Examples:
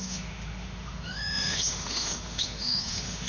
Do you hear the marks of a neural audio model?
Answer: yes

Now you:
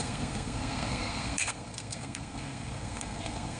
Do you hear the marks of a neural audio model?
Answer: yes